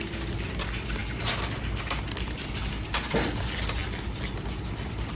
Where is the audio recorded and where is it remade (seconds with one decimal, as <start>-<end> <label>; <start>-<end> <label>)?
0.0-5.1 recorded